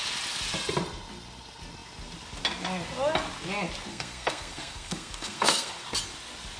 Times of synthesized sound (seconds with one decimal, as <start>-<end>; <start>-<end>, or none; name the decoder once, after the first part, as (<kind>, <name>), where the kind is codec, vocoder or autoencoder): 3.9-5.7 (codec, SNAC)